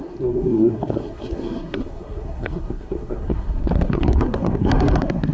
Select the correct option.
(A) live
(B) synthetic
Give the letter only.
B